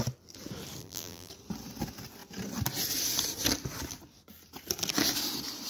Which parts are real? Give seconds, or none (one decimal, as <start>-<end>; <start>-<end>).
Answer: 0.0-0.8; 1.3-5.7